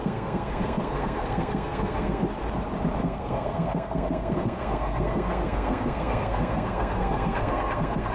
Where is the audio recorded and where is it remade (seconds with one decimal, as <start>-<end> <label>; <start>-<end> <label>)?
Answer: 0.0-2.2 remade; 2.2-3.0 recorded; 3.0-8.1 remade